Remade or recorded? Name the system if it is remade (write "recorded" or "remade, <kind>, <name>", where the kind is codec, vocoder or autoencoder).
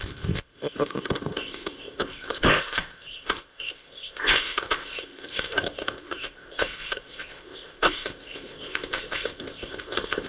remade, codec, ZipCodec